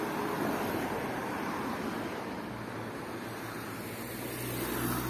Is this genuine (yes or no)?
yes